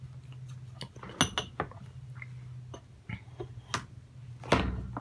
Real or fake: real